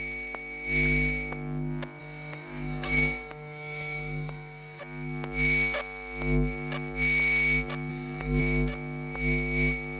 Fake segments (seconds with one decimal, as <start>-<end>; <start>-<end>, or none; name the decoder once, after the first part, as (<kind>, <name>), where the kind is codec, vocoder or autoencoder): 2.0-4.8 (codec, DAC); 7.9-8.4